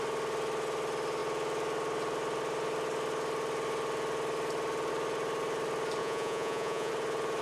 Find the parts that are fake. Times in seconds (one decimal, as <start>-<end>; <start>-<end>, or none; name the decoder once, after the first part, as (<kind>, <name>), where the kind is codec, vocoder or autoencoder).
6.0-6.9 (vocoder, Vocos)